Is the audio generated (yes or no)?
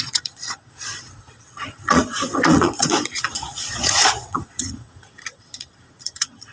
yes